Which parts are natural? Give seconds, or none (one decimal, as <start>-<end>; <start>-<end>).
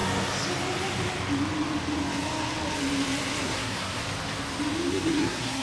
0.0-3.4; 4.0-4.9